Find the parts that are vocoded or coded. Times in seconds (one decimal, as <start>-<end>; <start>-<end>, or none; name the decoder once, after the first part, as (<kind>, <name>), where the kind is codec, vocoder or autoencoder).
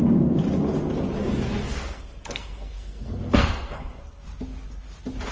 1.6-4.0 (codec, SNAC)